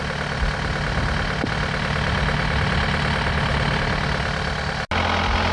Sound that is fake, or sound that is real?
real